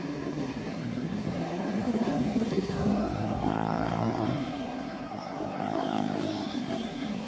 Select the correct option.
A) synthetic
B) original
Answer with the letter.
A